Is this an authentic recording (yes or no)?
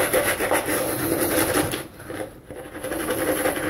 yes